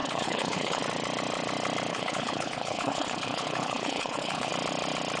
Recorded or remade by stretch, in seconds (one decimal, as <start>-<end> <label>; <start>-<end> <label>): 0.0-0.8 remade; 0.8-1.9 recorded; 1.9-4.5 remade; 4.5-5.2 recorded